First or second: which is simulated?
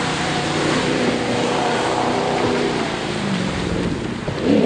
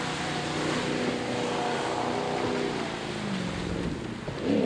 first